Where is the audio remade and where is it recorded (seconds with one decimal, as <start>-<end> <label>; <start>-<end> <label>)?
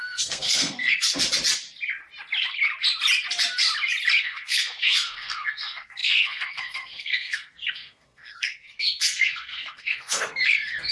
0.0-1.1 remade; 1.1-4.2 recorded; 4.2-10.9 remade